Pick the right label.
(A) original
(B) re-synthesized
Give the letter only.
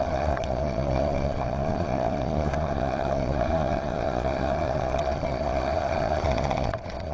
B